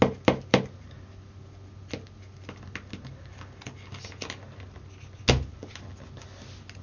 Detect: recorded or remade recorded